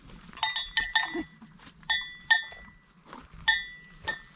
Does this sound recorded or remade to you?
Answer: recorded